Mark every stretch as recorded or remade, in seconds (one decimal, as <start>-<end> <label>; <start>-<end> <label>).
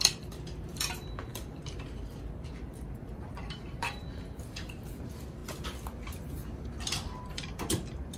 0.0-5.4 remade; 5.4-6.3 recorded; 6.3-8.2 remade